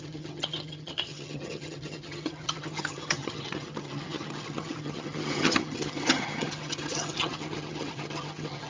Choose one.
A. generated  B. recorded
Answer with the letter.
A